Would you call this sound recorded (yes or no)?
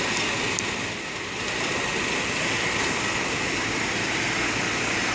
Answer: yes